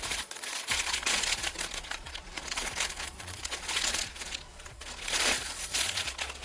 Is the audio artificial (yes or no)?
yes